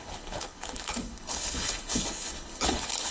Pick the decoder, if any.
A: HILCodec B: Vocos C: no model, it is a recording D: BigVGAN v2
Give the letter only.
A